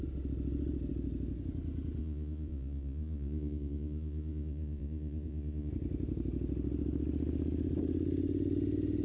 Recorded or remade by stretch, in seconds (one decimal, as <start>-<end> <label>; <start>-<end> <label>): 0.0-2.0 recorded; 2.0-5.7 remade; 5.7-9.0 recorded